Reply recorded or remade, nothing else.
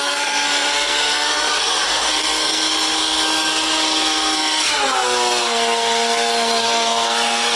remade